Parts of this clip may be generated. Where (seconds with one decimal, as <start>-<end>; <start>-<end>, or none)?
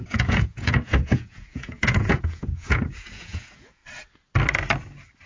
0.0-3.8